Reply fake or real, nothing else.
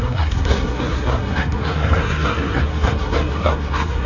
fake